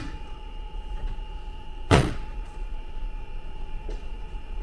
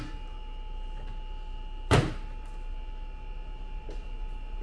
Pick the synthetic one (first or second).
first